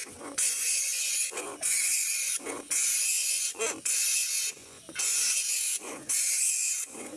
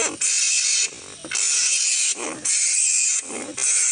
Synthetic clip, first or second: first